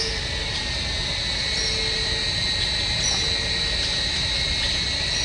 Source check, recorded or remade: recorded